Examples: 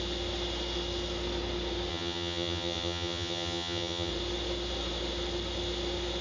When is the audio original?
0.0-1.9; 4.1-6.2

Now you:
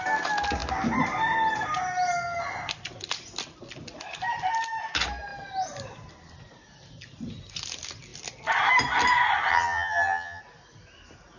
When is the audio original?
0.0-9.5; 10.4-11.4

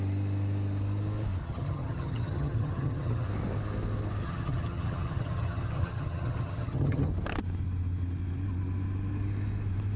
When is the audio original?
0.0-1.4; 3.3-4.2; 7.1-10.0

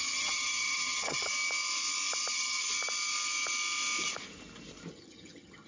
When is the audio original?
1.3-2.3; 2.7-4.9